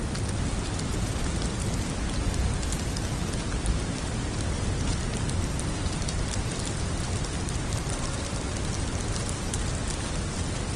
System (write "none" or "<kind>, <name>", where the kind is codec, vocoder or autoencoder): none